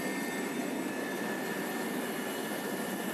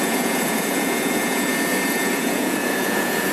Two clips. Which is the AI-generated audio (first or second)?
second